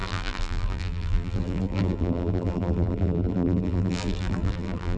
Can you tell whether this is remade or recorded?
remade